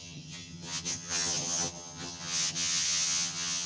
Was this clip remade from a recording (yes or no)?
yes